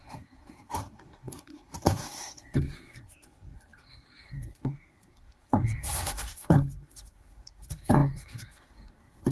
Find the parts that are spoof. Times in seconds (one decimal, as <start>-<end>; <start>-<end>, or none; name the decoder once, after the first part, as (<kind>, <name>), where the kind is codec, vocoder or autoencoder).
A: 0.0-9.3 (codec, SNAC)